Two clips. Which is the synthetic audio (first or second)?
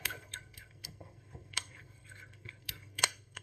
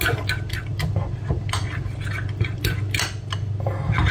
first